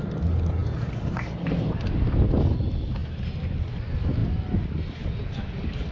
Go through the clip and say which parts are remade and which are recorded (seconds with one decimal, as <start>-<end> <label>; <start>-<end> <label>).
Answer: 0.0-5.9 recorded